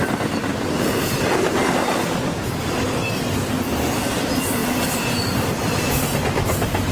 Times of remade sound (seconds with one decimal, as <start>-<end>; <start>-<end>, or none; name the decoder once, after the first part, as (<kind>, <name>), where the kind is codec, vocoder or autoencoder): 4.6-6.2 (vocoder, BigVGAN v2)